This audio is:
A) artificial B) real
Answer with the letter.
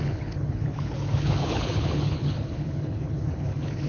A